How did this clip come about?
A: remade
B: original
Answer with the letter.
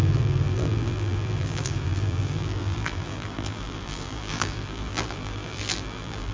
A